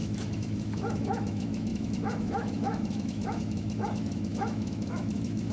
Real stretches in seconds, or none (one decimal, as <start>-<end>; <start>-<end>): none